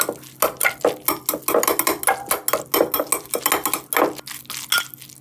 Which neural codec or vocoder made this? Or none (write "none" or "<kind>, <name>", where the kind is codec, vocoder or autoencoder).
none